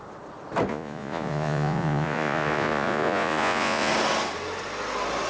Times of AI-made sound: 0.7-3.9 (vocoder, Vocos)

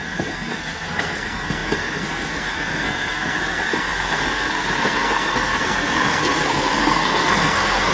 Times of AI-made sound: 0.0-7.9 (codec, SNAC)

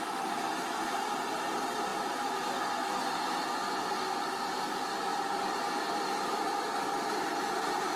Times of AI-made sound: 5.1-5.9 (vocoder, BigVGAN v2); 7.3-8.0

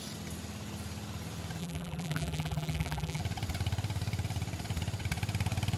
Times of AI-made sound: 1.6-3.2 (vocoder, BigVGAN v2)

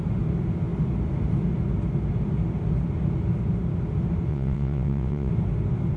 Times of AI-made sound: 4.3-5.3 (vocoder, WaveNeXt)

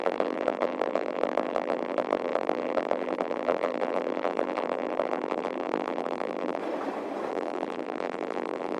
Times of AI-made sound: 0.0-6.6 (vocoder, BigVGAN v2); 7.3-8.8